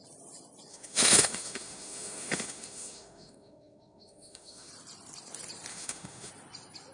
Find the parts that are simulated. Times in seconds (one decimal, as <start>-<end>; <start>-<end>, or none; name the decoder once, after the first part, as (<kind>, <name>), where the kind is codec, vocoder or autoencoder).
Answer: 0.7-4.7 (autoencoder, DAC-VAE); 5.7-6.3

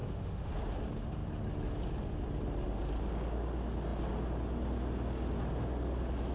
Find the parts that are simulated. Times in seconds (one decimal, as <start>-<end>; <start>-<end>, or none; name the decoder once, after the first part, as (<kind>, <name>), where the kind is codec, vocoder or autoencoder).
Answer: 0.0-0.5 (autoencoder, DAC-VAE)

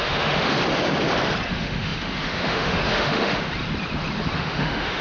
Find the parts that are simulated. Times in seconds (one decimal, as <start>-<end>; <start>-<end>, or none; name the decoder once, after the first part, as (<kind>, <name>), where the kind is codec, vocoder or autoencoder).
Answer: 0.0-0.6 (autoencoder, DAC-VAE); 1.5-3.5; 4.4-5.0

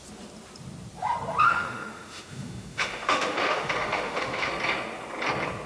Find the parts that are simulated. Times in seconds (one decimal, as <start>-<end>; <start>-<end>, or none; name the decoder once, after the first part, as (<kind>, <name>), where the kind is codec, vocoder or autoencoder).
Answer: 1.4-4.5 (autoencoder, DAC-VAE)

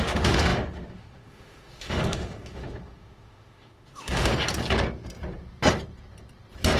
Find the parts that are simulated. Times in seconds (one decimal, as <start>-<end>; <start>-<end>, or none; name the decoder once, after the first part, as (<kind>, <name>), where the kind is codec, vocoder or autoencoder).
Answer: 0.0-4.3 (autoencoder, DAC-VAE)

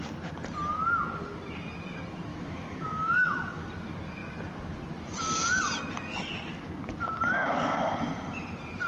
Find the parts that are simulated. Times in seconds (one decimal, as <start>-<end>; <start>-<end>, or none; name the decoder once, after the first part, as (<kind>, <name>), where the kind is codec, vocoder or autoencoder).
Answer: 2.3-3.7 (autoencoder, DAC-VAE)

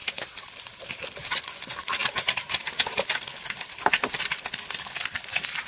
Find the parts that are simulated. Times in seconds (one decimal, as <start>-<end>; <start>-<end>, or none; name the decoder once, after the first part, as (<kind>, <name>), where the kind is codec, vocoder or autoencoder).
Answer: none

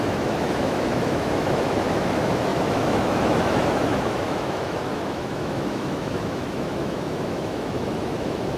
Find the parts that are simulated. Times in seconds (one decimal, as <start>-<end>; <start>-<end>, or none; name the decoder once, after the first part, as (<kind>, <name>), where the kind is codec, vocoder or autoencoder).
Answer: 0.0-8.6 (autoencoder, DAC-VAE)